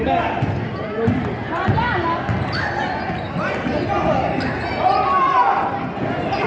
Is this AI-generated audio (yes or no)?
no